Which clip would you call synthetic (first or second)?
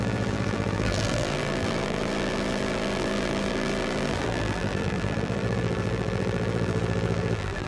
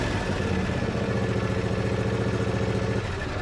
first